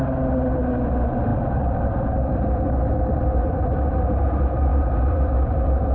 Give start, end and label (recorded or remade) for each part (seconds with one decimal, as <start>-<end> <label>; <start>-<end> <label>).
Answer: 0.0-5.9 remade